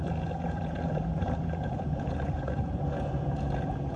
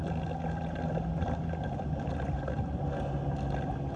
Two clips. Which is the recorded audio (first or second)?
second